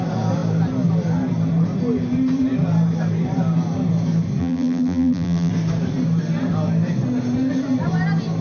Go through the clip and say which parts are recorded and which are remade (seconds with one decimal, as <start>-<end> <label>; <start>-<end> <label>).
0.0-4.4 recorded; 4.4-5.5 remade; 5.5-8.4 recorded